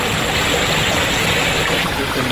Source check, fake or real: real